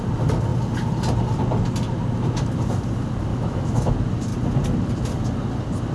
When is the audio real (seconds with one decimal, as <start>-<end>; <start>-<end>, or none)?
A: 0.0-3.3; 3.9-5.9

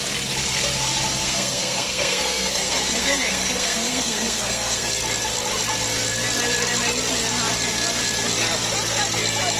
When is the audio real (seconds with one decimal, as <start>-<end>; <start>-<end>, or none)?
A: 0.0-1.2; 4.9-9.6

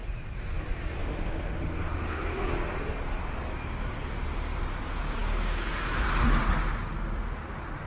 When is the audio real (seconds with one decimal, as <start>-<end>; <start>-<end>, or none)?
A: 0.0-1.0; 2.5-7.9

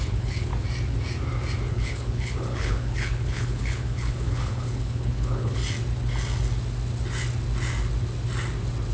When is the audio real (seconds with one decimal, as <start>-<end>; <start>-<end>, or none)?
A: 0.5-1.7; 5.6-8.9

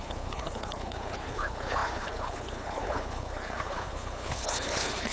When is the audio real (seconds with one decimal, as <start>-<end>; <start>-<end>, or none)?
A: none